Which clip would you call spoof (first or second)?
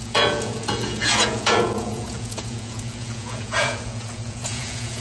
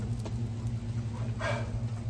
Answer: first